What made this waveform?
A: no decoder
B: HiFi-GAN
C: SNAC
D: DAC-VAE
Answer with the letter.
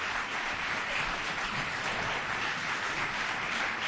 A